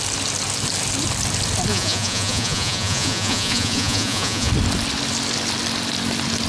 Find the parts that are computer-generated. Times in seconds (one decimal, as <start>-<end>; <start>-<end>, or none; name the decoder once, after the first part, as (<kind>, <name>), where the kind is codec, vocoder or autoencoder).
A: 1.7-4.5 (vocoder, Vocos)